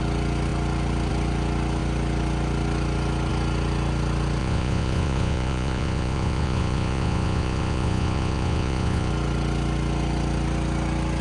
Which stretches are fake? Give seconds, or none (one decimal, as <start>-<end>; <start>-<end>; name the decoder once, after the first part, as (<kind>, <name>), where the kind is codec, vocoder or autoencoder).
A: 4.4-9.1 (vocoder, Vocos)